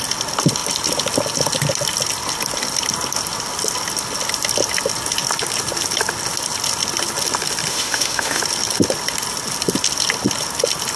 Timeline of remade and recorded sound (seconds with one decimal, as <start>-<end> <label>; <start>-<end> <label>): 0.0-7.7 recorded; 7.7-8.4 remade; 8.4-11.0 recorded